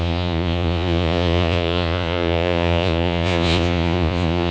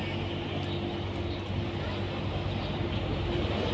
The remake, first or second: first